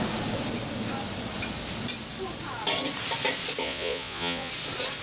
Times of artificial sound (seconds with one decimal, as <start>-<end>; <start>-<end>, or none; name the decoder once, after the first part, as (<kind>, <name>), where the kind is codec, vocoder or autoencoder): 3.6-4.5 (vocoder, Vocos)